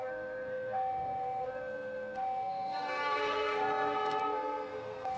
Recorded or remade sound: remade